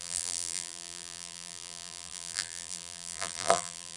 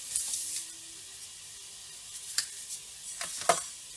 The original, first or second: second